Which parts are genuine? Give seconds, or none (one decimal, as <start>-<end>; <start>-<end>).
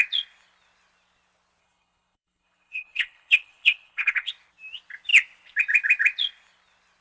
0.0-1.6; 4.3-7.0